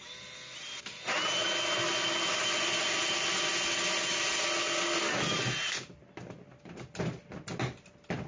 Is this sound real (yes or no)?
yes